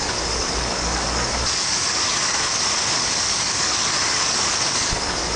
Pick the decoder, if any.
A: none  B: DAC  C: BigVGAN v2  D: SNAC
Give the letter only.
B